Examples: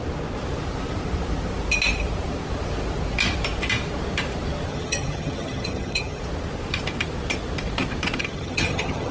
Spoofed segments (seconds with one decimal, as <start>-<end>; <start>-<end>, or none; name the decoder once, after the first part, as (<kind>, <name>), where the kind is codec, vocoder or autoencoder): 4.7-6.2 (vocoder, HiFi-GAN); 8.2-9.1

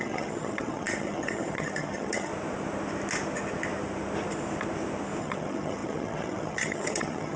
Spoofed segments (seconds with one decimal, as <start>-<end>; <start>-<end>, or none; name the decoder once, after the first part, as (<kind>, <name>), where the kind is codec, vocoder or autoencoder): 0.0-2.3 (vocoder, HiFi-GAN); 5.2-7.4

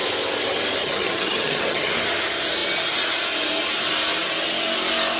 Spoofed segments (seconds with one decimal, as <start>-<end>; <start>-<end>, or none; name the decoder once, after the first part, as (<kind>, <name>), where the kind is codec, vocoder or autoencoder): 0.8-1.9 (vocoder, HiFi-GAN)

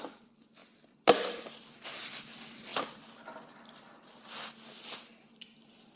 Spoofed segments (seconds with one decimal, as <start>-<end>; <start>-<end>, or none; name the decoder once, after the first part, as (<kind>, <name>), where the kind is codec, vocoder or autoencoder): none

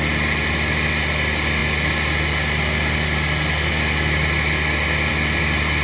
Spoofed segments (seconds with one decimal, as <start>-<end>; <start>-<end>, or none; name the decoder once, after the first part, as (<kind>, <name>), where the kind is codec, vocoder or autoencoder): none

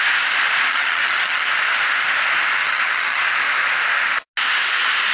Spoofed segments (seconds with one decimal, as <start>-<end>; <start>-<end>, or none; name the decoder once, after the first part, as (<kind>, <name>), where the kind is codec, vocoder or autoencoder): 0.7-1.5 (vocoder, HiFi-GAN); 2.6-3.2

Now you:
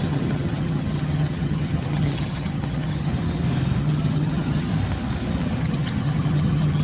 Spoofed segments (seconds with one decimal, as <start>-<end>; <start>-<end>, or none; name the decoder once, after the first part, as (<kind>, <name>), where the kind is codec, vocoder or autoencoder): 0.0-3.1 (vocoder, HiFi-GAN); 3.8-4.7; 5.6-6.8

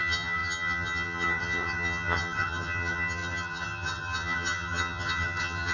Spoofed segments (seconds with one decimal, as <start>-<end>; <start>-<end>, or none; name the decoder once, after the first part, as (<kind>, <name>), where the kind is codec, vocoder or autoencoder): 0.0-5.7 (vocoder, HiFi-GAN)